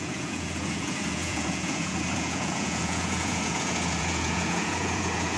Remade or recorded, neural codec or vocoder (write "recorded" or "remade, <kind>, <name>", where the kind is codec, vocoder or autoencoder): remade, vocoder, Vocos